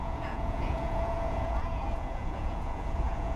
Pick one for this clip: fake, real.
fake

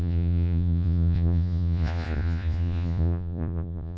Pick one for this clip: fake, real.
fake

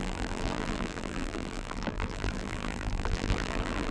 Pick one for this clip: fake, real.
fake